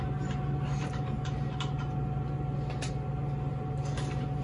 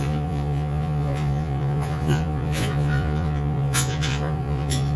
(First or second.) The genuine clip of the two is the first